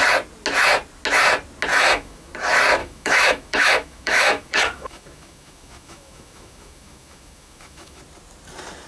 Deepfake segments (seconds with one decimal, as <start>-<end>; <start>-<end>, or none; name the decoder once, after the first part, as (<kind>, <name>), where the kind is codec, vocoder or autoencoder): 1.7-2.3 (autoencoder, DAC-VAE); 2.8-8.0